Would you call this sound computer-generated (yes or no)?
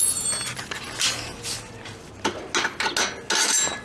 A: no